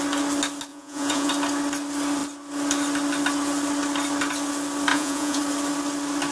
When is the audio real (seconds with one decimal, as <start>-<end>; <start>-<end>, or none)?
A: 0.0-0.7; 1.3-4.9; 5.4-6.3